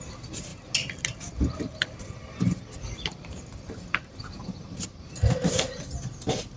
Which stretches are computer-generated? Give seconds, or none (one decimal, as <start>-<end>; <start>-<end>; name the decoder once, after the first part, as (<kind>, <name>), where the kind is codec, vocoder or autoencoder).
3.1-5.8 (vocoder, BigVGAN v2)